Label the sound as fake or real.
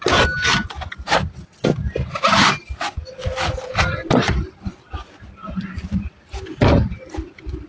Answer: real